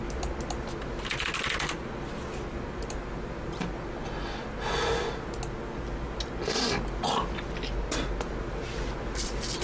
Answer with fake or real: real